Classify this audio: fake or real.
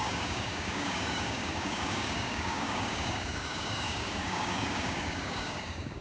fake